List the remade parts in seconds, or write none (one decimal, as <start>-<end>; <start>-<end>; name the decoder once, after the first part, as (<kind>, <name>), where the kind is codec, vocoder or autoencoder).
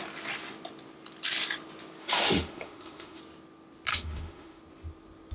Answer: 2.0-3.2 (autoencoder, DAC-VAE); 3.9-4.6